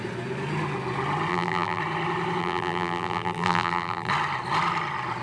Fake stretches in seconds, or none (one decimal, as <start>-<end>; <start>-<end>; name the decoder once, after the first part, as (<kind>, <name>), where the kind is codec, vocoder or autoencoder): 1.3-1.8 (vocoder, BigVGAN v2); 2.4-4.1